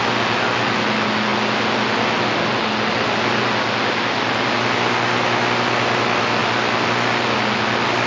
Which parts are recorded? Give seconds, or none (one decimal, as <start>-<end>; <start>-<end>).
0.0-8.1